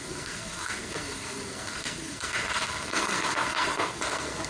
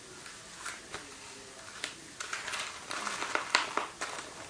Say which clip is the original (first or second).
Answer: second